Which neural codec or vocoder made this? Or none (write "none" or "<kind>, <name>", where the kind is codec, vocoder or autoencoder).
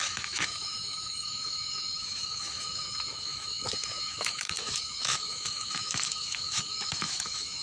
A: autoencoder, DAC-VAE